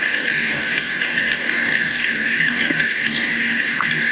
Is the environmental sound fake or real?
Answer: fake